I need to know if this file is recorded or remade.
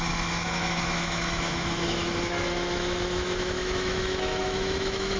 remade